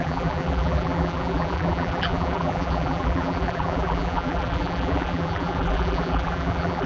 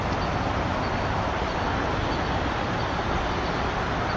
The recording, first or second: second